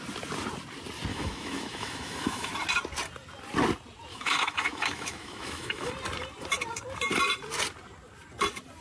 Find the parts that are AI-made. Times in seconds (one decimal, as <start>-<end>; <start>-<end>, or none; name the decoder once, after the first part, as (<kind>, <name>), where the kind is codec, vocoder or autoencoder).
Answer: 1.1-2.5 (autoencoder, DAC-VAE); 4.1-5.9